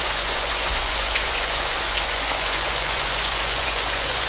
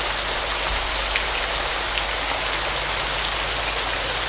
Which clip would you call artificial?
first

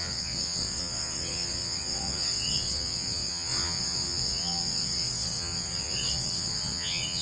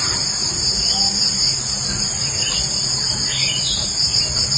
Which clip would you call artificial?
first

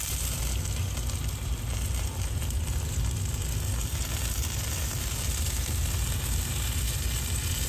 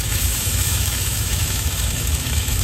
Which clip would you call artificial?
second